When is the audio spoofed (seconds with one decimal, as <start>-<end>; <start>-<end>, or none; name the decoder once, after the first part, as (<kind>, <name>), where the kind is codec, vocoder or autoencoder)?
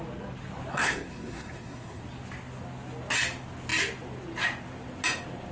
0.7-2.0 (codec, SNAC)